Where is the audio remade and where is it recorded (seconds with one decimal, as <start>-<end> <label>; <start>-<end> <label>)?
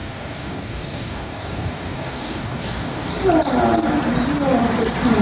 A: 0.0-3.1 remade; 3.1-5.2 recorded